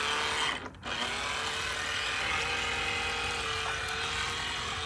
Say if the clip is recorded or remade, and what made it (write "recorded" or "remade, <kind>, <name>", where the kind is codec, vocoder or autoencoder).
recorded